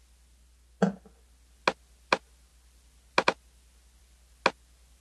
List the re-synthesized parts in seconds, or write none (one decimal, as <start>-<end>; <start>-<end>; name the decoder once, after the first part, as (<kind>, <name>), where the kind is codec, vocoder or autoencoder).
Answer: none